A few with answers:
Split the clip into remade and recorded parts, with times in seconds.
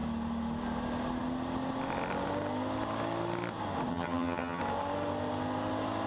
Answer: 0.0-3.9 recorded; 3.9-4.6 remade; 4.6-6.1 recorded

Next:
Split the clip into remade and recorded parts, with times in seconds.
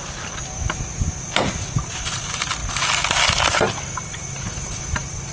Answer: 0.0-5.3 recorded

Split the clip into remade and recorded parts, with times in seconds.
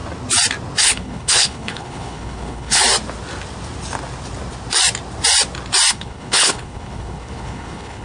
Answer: 0.0-0.8 recorded; 0.8-2.8 remade; 2.8-5.9 recorded; 5.9-8.0 remade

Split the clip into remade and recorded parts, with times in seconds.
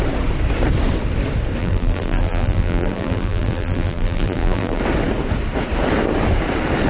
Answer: 0.0-1.6 recorded; 1.6-4.8 remade; 4.8-6.9 recorded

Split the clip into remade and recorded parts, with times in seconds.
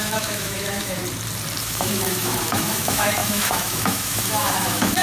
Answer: 0.0-1.0 remade; 1.0-1.6 recorded; 1.6-5.0 remade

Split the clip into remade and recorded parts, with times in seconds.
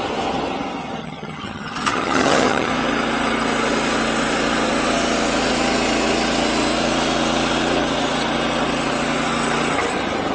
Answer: 0.0-1.0 recorded; 1.0-2.7 remade; 2.7-10.3 recorded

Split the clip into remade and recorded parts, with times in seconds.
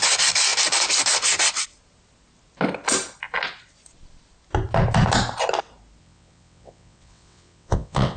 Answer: 0.0-6.0 recorded; 6.0-8.2 remade